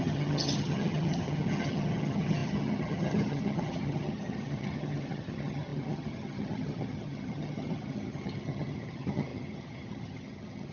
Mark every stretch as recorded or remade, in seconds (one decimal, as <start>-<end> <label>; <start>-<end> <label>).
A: 0.0-10.7 remade